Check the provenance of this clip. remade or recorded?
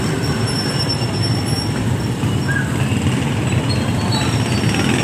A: remade